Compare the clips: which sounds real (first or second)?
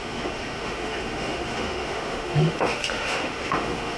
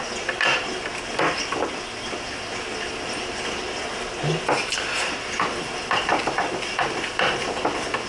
second